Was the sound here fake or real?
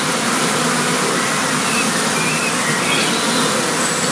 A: real